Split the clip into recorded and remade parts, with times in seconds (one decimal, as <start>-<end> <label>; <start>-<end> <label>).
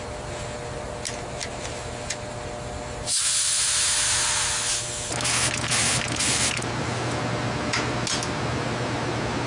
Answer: 0.0-9.5 recorded